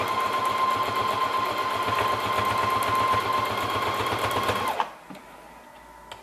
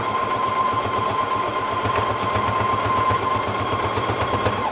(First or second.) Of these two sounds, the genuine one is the first